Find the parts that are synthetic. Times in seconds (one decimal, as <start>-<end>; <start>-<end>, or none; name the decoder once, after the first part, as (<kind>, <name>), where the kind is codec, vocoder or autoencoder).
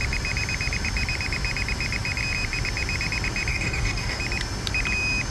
3.5-4.2 (codec, DAC)